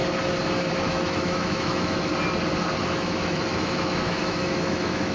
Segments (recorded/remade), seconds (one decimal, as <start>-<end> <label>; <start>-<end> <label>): 0.0-0.7 recorded; 0.7-2.1 remade; 2.1-2.8 recorded; 2.8-5.1 remade

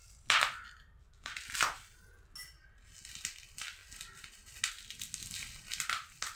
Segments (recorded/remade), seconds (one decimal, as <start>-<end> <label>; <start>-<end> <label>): 0.0-6.4 recorded

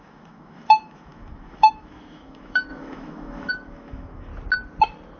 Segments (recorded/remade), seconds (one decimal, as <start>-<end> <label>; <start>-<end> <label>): 0.0-4.3 remade; 4.3-5.2 recorded

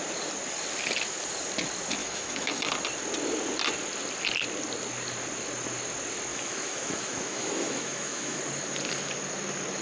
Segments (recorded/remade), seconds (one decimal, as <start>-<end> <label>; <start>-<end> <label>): 0.0-2.0 recorded; 2.0-2.6 remade; 2.6-6.3 recorded; 6.3-8.4 remade; 8.4-9.8 recorded

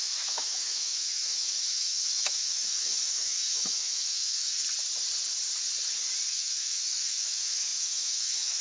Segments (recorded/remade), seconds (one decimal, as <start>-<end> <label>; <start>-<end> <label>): 0.0-4.6 remade; 4.6-6.3 recorded; 6.3-8.6 remade

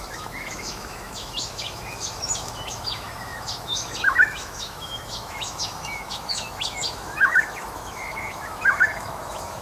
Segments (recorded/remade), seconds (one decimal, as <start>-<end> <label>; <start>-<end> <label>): 0.0-9.6 remade

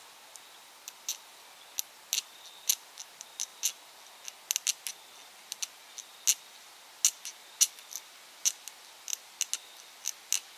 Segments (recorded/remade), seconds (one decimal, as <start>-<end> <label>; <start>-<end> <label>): 0.0-10.6 recorded

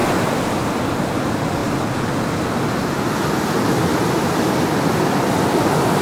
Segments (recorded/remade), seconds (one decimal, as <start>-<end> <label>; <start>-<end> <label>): 0.0-6.0 recorded